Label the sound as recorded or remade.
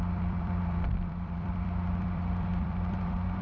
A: remade